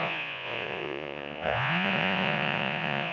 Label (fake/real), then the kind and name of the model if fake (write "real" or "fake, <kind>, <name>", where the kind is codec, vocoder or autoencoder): fake, vocoder, Vocos